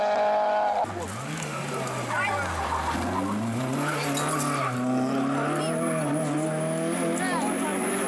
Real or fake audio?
real